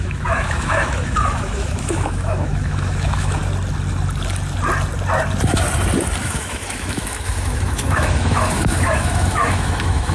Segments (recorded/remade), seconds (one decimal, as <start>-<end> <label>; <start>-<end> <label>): 0.0-3.4 remade; 3.4-6.2 recorded; 6.2-10.1 remade